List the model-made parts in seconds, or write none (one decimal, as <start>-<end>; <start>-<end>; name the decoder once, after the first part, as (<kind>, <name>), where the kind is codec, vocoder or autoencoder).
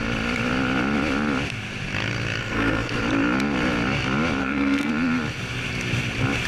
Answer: 2.4-3.0 (codec, SNAC); 4.4-4.9